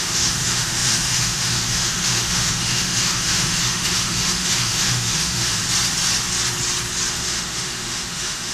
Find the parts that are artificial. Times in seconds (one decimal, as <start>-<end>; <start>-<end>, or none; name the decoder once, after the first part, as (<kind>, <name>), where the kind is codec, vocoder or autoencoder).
0.0-5.6 (autoencoder, DAC-VAE); 7.1-8.5